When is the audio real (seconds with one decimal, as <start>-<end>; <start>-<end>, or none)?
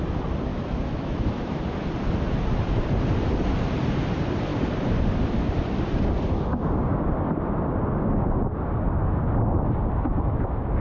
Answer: 0.0-0.5; 1.6-10.1